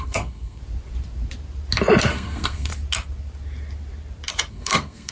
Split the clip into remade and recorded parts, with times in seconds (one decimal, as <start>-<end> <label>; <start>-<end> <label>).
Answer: 0.0-0.6 remade; 0.6-2.1 recorded; 2.1-2.7 remade; 2.7-4.5 recorded; 4.5-5.1 remade